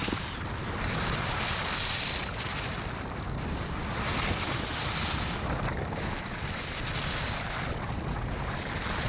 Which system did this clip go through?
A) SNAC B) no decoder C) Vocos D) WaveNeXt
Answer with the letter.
B